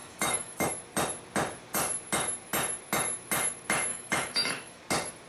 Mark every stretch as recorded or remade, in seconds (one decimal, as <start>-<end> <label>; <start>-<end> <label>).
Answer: 0.0-0.7 remade; 0.7-3.9 recorded; 3.9-4.8 remade; 4.8-5.3 recorded